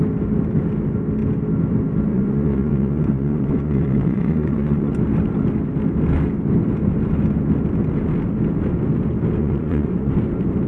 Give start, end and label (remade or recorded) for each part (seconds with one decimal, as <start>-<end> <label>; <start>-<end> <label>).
0.0-2.1 recorded; 2.1-4.9 remade; 4.9-9.4 recorded; 9.4-10.1 remade; 10.1-10.7 recorded